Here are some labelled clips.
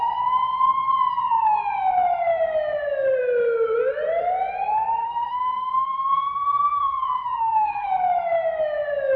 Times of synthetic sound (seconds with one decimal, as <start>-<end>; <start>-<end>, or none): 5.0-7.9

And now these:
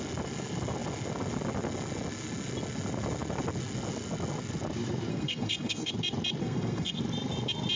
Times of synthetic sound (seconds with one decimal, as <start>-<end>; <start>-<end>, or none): 5.1-5.9; 6.4-7.0

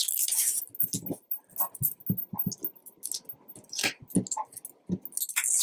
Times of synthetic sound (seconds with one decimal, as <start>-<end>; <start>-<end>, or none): none

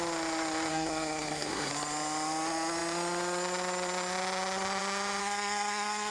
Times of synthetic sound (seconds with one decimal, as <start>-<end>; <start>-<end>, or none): 0.7-1.7; 5.2-6.1

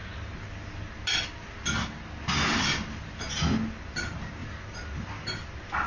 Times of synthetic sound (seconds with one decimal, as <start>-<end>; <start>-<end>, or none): none

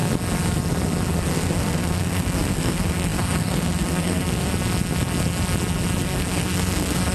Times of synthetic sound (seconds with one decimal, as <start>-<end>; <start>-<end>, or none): 1.3-4.5; 6.0-7.1

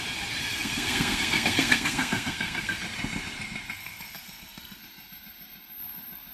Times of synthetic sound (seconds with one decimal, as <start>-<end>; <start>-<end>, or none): 0.4-2.8; 3.8-4.8

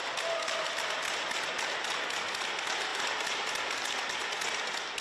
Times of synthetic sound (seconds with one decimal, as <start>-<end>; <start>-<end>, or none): none